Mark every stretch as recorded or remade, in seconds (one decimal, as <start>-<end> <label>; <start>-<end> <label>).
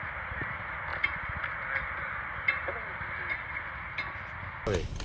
0.0-5.0 recorded